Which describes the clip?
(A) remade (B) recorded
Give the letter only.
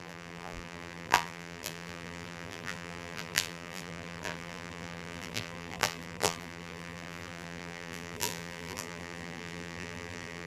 A